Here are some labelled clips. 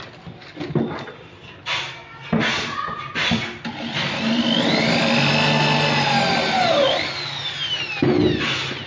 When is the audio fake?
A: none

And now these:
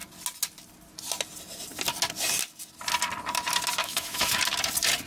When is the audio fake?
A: 3.8-4.4

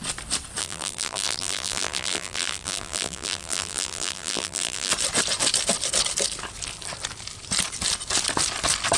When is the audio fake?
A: 0.6-4.9

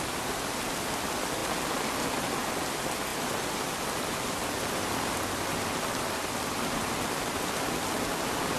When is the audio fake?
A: none

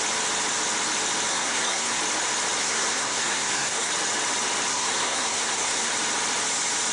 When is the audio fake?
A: 1.3-2.0; 2.6-3.9; 4.7-5.9

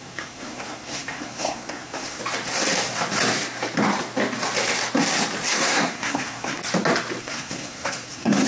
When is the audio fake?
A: 0.0-2.2; 5.5-6.6; 7.2-8.5